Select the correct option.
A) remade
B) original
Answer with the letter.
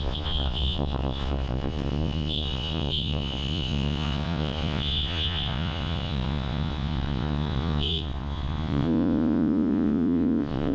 A